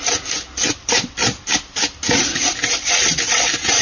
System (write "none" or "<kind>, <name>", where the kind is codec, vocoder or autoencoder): none